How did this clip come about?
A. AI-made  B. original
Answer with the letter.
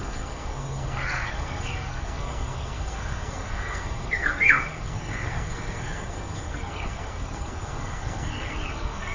A